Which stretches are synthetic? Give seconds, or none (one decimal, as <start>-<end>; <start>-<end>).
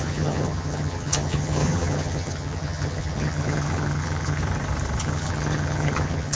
0.0-4.4; 5.0-6.3